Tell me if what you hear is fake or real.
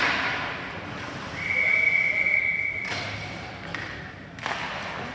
real